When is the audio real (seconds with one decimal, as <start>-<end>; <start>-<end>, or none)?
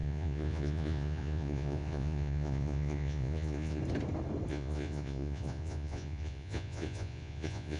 3.8-4.5